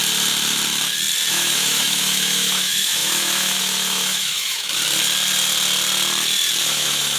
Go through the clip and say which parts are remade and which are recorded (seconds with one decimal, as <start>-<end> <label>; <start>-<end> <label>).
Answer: 0.0-1.3 recorded; 1.3-4.8 remade; 4.8-6.6 recorded; 6.6-7.2 remade